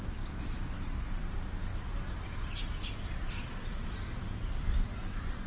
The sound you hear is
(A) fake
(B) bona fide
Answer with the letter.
B